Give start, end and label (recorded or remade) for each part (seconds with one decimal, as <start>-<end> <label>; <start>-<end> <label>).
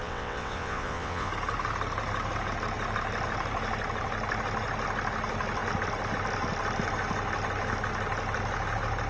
0.0-1.3 remade; 1.3-9.1 recorded